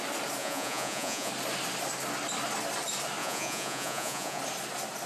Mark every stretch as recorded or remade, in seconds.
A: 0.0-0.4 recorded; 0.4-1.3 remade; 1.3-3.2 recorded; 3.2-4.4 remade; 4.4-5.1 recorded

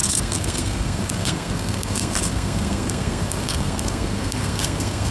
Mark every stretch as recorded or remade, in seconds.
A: 0.0-5.1 remade

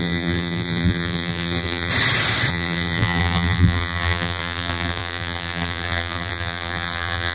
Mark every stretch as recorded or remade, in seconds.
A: 0.0-1.9 remade; 1.9-2.5 recorded; 2.5-7.3 remade

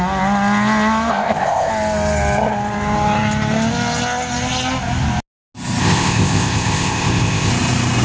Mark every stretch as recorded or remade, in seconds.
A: 0.0-1.1 recorded; 1.1-1.7 remade; 1.7-5.8 recorded; 5.8-7.5 remade; 7.5-8.0 recorded

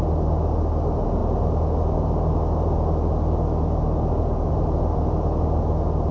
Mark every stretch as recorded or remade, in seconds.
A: 0.0-6.1 recorded

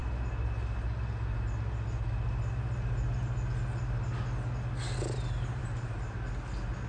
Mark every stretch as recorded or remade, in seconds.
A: 0.0-5.6 recorded; 5.6-6.2 remade; 6.2-6.9 recorded